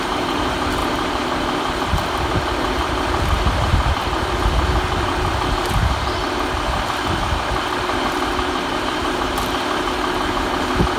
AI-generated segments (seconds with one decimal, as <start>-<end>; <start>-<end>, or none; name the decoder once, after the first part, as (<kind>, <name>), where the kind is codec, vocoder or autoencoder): 0.8-4.3 (vocoder, BigVGAN v2)